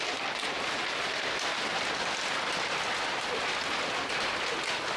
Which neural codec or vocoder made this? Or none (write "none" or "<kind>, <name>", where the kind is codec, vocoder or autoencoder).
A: none